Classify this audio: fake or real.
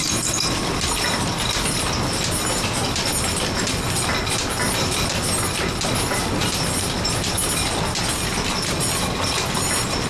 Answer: real